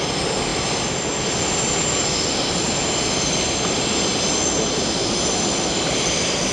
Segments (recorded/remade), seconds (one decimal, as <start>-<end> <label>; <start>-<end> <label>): 0.0-6.5 recorded